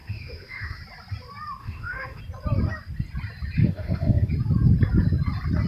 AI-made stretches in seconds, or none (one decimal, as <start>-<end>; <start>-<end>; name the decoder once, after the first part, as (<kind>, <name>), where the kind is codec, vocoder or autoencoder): 0.0-0.8 (autoencoder, DAC-VAE); 1.6-2.2; 3.6-4.3